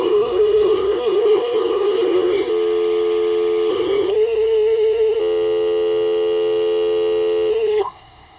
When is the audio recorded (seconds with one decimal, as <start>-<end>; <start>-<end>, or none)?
2.5-3.7; 5.2-7.5